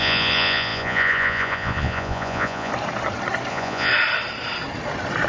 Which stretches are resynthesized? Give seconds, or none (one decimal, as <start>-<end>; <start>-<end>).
0.0-2.7; 3.5-3.9